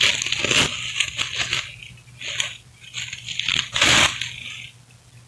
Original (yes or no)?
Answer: yes